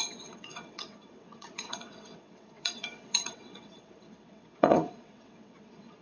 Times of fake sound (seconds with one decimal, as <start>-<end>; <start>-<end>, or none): 0.0-6.0